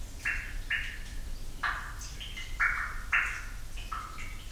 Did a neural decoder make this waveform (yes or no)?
no